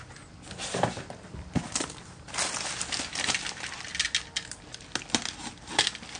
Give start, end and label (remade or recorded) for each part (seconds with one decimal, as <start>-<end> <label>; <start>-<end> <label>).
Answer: 0.0-6.2 recorded